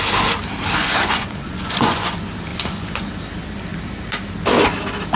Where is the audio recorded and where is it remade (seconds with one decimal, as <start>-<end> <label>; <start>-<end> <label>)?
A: 0.0-0.8 recorded; 0.8-2.1 remade; 2.1-2.5 recorded; 2.5-3.1 remade; 3.1-5.2 recorded